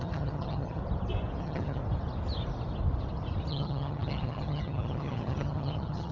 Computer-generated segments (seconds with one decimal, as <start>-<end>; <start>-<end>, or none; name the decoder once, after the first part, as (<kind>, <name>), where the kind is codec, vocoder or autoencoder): 0.0-0.8 (vocoder, HiFi-GAN); 1.4-1.8; 3.5-6.1